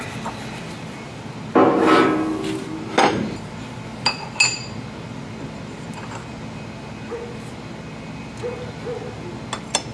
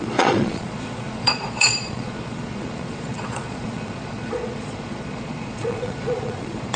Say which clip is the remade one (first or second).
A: second